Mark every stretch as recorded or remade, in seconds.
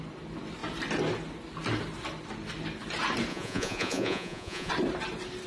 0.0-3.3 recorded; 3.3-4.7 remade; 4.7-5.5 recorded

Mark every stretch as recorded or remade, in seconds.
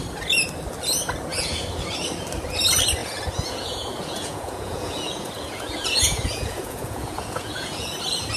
0.0-1.3 recorded; 1.3-1.8 remade; 1.8-3.0 recorded; 3.0-8.0 remade; 8.0-8.4 recorded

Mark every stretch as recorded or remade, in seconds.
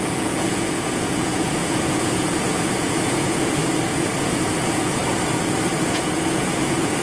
0.0-3.6 remade; 3.6-4.2 recorded; 4.2-5.0 remade; 5.0-5.8 recorded; 5.8-7.0 remade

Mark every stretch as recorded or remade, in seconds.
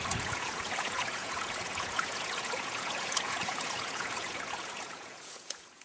0.0-5.8 remade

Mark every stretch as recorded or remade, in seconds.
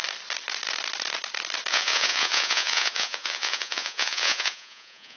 0.0-1.7 recorded; 1.7-5.2 remade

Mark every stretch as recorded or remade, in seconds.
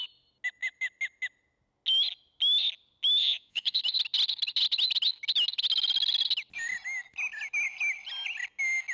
0.0-3.2 recorded; 3.2-3.8 remade; 3.8-8.9 recorded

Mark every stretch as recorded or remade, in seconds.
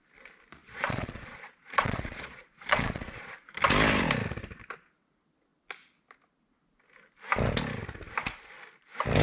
0.0-0.6 recorded; 0.6-3.3 remade; 3.3-9.2 recorded